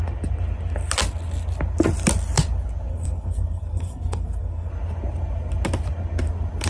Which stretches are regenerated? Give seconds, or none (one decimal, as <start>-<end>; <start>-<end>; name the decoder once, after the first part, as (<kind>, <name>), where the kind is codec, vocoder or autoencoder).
2.9-4.7 (codec, SNAC)